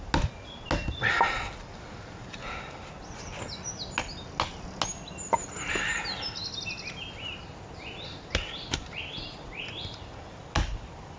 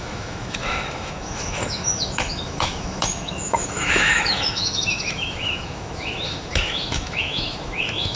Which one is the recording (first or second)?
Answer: first